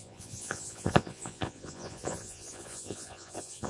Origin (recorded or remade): remade